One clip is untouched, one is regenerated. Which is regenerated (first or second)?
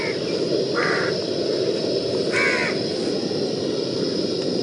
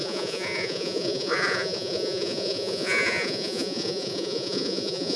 second